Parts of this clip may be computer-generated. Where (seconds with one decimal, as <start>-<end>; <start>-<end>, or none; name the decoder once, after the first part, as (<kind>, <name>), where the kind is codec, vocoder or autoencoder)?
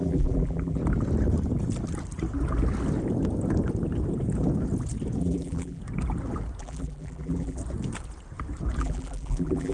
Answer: 0.0-0.8 (vocoder, BigVGAN v2); 5.2-5.8; 6.6-7.6; 8.8-9.7